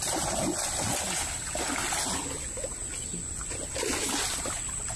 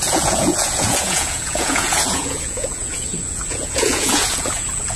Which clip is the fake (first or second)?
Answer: second